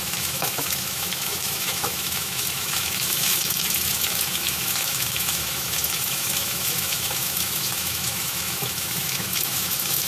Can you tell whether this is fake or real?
fake